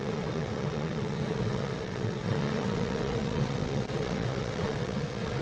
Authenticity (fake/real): fake